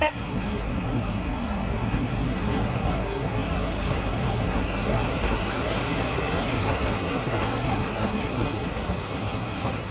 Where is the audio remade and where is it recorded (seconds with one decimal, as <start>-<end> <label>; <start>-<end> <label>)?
0.0-9.9 remade